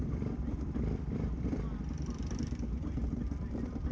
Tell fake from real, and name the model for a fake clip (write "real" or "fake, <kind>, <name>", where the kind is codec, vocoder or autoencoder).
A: fake, vocoder, BigVGAN v2